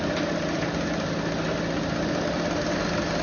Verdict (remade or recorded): recorded